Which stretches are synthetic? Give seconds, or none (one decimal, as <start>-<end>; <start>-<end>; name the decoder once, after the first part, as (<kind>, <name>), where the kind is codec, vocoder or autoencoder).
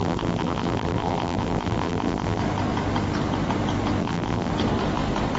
0.0-2.4 (vocoder, BigVGAN v2); 4.0-4.5